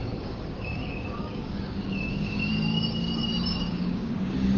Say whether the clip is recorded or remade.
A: remade